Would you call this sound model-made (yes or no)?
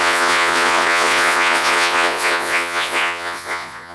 yes